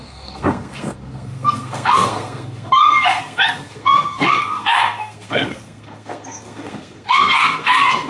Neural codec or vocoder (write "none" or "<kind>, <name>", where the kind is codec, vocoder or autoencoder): codec, SNAC